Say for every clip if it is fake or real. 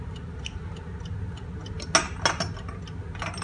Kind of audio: real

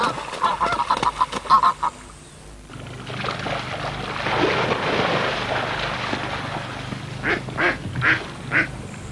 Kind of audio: real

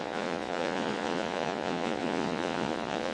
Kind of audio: fake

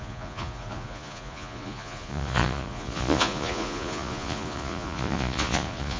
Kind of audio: fake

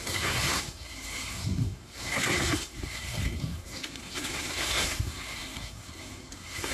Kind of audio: fake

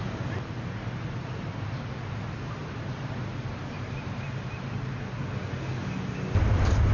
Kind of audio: real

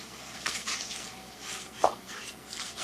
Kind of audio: fake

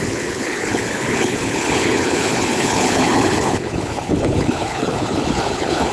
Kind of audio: fake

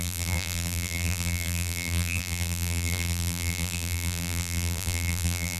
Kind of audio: fake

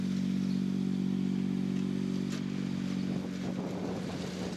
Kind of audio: real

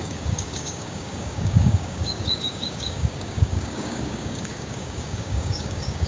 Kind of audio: fake